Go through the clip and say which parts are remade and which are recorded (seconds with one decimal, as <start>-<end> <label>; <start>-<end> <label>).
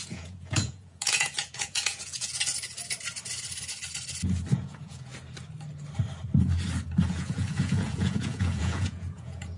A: 0.0-2.5 remade; 2.5-4.5 recorded; 4.5-5.1 remade; 5.1-7.1 recorded; 7.1-9.6 remade